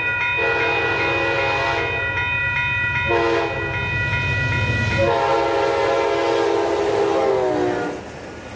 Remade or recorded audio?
recorded